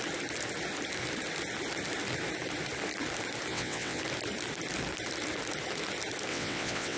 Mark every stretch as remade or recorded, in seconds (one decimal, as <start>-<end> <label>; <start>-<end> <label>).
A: 0.0-3.5 recorded; 3.5-4.0 remade; 4.0-6.3 recorded; 6.3-7.0 remade